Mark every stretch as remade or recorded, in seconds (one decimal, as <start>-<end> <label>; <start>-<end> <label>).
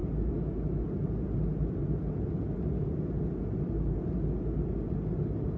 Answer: 0.0-5.6 recorded